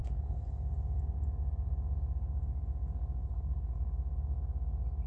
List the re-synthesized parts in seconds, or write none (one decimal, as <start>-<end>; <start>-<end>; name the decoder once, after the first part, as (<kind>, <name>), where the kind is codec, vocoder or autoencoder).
0.0-0.5 (codec, HILCodec); 3.2-3.8